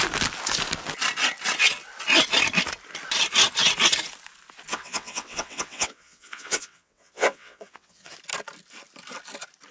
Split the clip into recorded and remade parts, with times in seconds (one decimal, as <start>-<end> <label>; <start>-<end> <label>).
0.0-4.7 recorded; 4.7-8.1 remade; 8.1-9.7 recorded